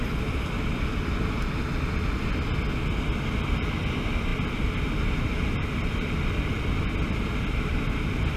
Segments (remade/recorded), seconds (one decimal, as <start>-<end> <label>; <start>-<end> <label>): 0.0-8.4 recorded